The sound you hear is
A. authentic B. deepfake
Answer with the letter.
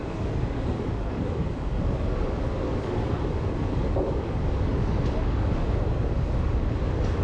B